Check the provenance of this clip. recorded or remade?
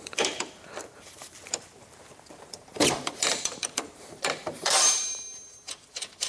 remade